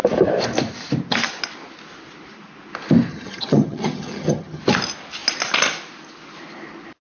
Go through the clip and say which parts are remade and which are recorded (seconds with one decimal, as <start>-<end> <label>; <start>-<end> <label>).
0.0-3.1 recorded; 3.1-4.6 remade; 4.6-7.0 recorded

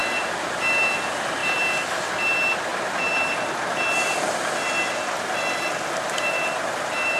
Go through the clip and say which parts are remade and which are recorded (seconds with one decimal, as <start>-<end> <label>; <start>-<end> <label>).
0.0-0.6 remade; 0.6-2.7 recorded; 2.7-7.2 remade

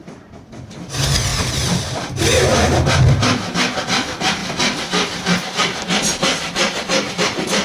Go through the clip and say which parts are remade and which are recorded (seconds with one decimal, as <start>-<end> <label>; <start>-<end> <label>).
0.0-7.6 recorded